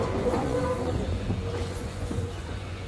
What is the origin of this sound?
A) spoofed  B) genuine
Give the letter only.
A